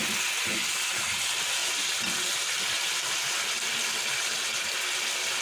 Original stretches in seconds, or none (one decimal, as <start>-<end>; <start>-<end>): 0.0-5.4